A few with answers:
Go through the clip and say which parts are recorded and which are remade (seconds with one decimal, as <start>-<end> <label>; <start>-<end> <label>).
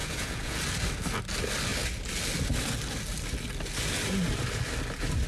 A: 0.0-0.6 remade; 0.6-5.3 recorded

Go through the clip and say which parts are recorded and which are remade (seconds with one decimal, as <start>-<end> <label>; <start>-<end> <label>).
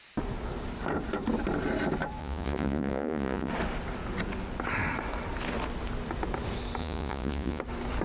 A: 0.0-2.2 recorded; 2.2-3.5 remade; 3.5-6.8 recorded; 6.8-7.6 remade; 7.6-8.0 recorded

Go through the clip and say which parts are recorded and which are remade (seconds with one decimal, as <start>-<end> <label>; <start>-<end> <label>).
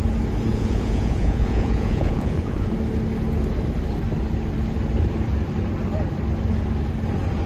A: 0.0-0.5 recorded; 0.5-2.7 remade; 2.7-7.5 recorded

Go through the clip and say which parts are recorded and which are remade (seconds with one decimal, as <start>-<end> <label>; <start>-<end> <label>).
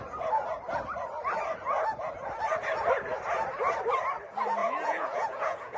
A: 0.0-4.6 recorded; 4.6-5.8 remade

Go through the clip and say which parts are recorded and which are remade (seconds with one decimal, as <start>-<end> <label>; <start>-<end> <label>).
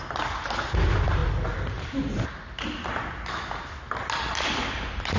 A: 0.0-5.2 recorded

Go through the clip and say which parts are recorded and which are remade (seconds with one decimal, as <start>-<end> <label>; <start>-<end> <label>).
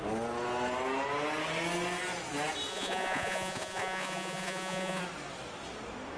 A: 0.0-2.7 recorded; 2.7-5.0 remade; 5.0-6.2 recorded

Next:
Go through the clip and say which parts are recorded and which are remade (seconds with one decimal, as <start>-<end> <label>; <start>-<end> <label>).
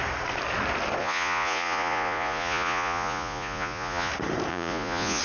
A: 0.0-1.0 recorded; 1.0-4.1 remade; 4.1-4.5 recorded; 4.5-5.2 remade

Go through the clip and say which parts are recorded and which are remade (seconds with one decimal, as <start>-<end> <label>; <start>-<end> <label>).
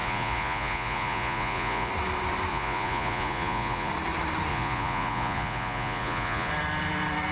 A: 0.0-1.9 remade; 1.9-2.5 recorded; 2.5-3.9 remade; 3.9-4.5 recorded; 4.5-6.5 remade; 6.5-7.3 recorded